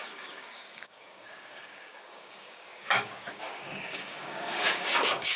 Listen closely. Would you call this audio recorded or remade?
remade